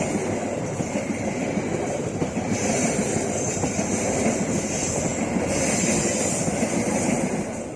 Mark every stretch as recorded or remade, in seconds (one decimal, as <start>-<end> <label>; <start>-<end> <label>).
0.0-7.8 recorded